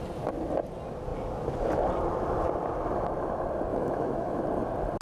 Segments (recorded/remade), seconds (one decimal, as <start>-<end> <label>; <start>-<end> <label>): 0.0-3.7 recorded; 3.7-4.4 remade; 4.4-5.0 recorded